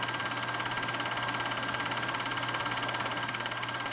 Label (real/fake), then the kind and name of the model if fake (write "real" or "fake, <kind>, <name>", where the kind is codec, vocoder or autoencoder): real